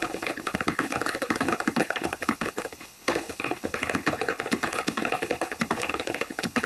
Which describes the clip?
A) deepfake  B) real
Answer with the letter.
A